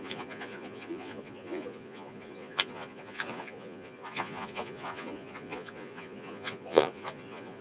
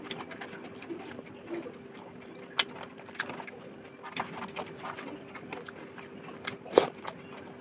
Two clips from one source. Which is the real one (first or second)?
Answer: second